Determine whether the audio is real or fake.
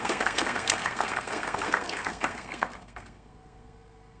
fake